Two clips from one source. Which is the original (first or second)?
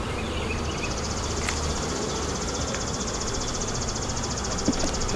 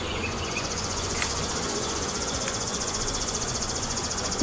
first